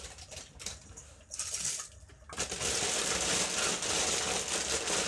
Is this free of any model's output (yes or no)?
yes